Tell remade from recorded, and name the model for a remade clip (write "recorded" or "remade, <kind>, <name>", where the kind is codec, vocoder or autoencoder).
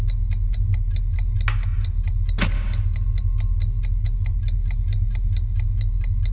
recorded